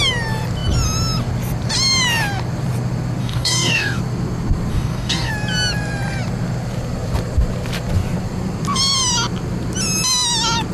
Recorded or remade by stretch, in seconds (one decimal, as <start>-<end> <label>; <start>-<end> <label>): 0.0-3.2 recorded; 3.2-4.0 remade; 4.0-4.7 recorded; 4.7-5.3 remade; 5.3-10.7 recorded